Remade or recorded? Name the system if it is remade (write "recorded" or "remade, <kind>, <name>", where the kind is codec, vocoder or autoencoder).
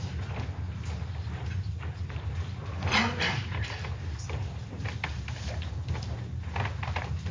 recorded